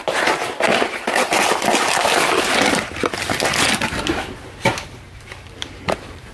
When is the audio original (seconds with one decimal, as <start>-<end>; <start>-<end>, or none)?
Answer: 0.7-4.5